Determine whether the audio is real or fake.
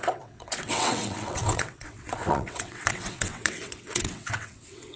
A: fake